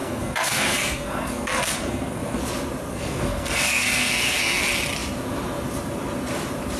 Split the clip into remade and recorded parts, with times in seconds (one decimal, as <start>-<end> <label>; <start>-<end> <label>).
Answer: 0.0-2.4 remade; 2.4-2.9 recorded; 2.9-4.6 remade; 4.6-6.8 recorded